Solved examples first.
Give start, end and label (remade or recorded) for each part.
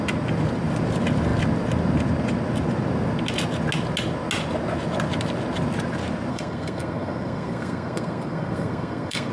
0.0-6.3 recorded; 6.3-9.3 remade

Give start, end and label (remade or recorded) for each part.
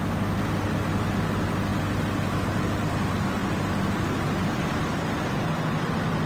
0.0-6.3 recorded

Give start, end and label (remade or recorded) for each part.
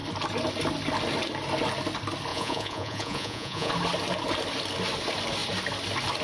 0.0-2.3 recorded; 2.3-3.7 remade; 3.7-6.2 recorded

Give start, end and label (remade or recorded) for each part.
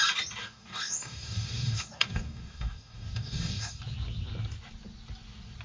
0.0-0.4 recorded; 0.4-3.8 remade; 3.8-5.6 recorded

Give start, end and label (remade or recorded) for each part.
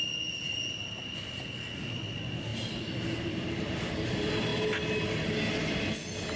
0.0-6.4 recorded